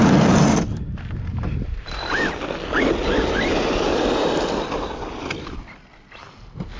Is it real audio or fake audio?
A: real